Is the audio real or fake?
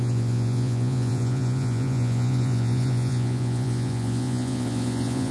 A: fake